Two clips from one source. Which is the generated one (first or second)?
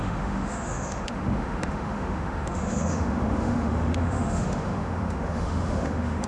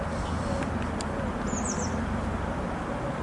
first